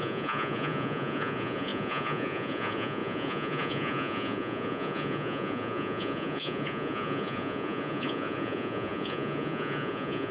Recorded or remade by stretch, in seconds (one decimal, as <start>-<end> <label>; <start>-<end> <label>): 0.0-10.3 remade